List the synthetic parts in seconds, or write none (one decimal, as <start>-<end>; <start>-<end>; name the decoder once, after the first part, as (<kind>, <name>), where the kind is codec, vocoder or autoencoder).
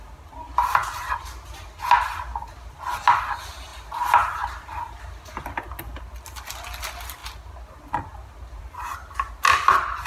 none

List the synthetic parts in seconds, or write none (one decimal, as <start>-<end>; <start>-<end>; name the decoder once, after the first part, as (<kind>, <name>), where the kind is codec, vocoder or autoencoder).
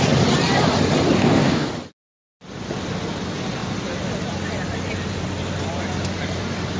1.2-1.7 (codec, DAC)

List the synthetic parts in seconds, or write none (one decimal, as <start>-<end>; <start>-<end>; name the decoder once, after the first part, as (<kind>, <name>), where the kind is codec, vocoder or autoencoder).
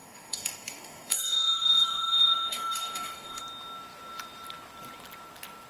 0.0-3.4 (codec, DAC)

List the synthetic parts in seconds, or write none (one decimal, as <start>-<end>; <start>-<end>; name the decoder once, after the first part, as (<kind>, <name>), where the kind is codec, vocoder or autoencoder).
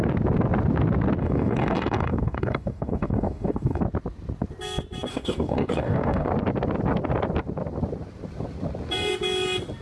1.2-3.8 (codec, DAC); 5.1-6.3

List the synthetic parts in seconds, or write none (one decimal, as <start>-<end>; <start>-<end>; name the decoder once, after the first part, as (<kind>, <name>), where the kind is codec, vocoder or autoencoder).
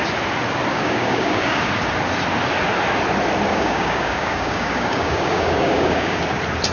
0.7-1.7 (codec, DAC); 3.5-6.2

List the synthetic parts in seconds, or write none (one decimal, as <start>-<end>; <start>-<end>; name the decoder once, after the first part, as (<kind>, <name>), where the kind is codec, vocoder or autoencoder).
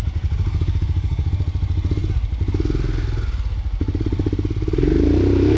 0.5-1.3 (codec, DAC)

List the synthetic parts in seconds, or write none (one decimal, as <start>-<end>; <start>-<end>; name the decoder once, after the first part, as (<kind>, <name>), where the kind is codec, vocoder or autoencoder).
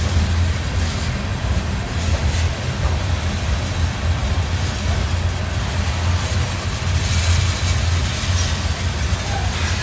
none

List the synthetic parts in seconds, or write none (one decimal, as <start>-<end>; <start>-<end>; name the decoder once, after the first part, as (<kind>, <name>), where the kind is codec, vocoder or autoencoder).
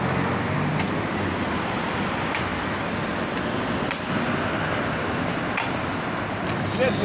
none